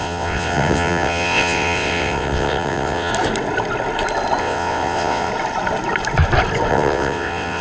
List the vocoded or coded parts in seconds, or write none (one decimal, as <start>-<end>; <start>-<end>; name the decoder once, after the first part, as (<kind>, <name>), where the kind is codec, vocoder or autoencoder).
0.0-3.1 (vocoder, WaveNeXt); 4.4-5.3; 6.7-7.6